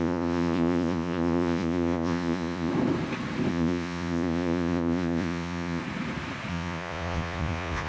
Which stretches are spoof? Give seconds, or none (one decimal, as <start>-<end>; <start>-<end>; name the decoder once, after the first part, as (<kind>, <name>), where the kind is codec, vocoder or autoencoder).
0.0-2.7 (vocoder, Vocos); 3.5-5.8; 6.5-7.9

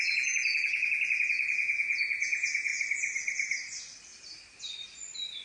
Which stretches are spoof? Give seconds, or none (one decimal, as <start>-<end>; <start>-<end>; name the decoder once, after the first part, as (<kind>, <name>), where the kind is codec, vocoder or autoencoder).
0.0-2.7 (vocoder, Vocos)

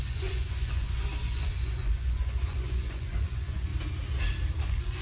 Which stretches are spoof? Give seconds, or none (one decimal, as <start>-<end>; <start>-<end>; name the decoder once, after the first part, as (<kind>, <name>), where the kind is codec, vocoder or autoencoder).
0.0-3.7 (vocoder, Vocos); 4.6-5.0

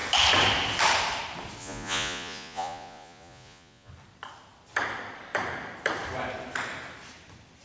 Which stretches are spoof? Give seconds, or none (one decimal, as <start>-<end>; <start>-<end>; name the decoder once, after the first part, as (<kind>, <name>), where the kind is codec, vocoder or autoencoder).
1.6-3.9 (vocoder, Vocos)